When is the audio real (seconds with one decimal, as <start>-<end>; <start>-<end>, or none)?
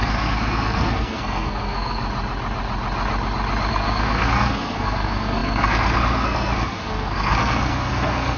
2.0-3.7